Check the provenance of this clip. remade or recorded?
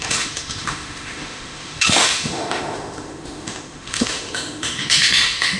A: remade